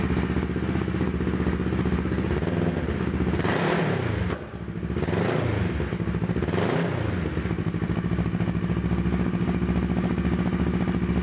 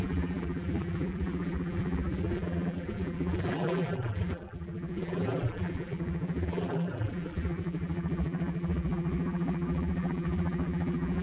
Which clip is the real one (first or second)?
first